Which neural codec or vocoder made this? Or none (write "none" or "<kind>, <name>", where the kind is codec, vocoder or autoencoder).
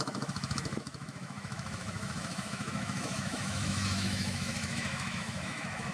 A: autoencoder, DAC-VAE